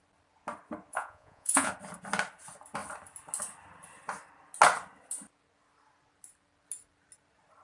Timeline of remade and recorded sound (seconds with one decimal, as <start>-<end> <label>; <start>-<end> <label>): 0.0-0.9 recorded; 0.9-1.7 remade; 1.7-7.6 recorded